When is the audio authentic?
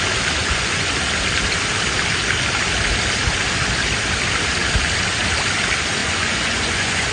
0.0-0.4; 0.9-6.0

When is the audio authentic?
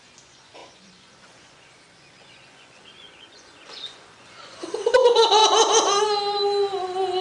5.4-7.2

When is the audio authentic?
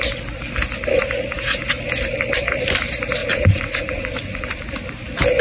0.0-3.2; 4.6-5.4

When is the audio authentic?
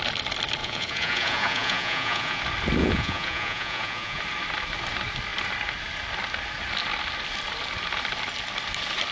0.0-0.6; 2.4-2.8; 4.2-9.1